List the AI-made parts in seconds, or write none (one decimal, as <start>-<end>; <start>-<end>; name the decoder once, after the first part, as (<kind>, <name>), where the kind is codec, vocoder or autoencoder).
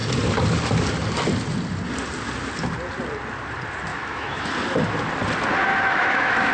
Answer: 3.9-4.5 (autoencoder, DAC-VAE); 5.7-6.5